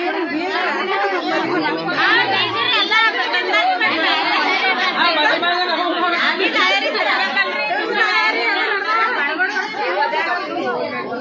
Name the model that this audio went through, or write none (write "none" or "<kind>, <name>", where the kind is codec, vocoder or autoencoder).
none